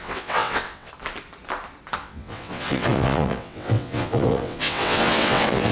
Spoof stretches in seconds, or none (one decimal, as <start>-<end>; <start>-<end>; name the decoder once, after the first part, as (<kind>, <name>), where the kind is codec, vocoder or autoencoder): 0.0-0.9 (vocoder, WaveNeXt); 2.0-5.7